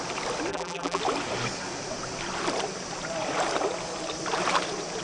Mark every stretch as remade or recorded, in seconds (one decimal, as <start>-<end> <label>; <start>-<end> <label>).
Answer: 0.0-0.5 recorded; 0.5-1.0 remade; 1.0-5.0 recorded